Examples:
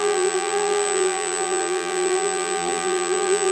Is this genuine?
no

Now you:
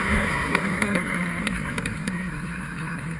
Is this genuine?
no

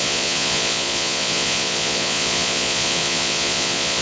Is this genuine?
no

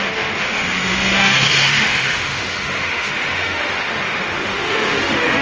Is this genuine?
no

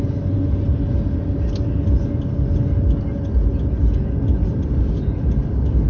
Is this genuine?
yes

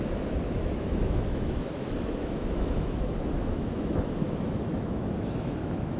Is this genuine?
no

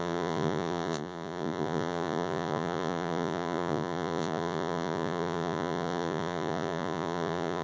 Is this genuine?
no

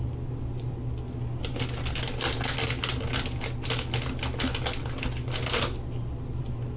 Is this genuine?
yes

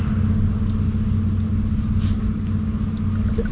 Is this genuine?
yes